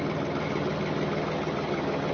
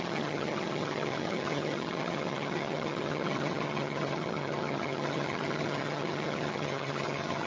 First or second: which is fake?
second